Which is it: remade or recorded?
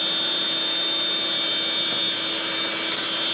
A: recorded